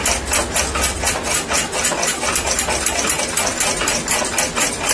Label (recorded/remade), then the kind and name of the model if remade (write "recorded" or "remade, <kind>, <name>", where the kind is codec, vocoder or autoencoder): recorded